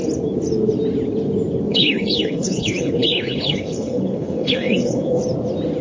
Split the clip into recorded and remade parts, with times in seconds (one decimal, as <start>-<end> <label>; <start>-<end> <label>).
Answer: 0.0-1.7 recorded; 1.7-5.2 remade; 5.2-5.8 recorded

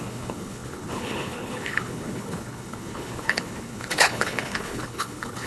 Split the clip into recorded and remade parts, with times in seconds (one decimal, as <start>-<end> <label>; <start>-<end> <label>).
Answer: 0.0-5.5 remade

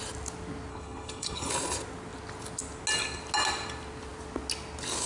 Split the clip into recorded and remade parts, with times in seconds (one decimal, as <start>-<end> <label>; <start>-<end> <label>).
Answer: 0.0-0.7 recorded; 0.7-1.5 remade; 1.5-5.1 recorded

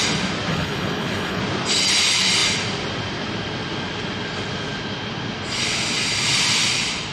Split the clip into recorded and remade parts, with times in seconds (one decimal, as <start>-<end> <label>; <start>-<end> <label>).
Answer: 0.0-0.5 recorded; 0.5-1.4 remade; 1.4-7.1 recorded

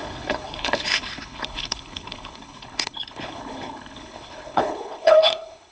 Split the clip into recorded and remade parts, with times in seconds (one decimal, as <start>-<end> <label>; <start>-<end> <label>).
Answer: 0.0-5.7 remade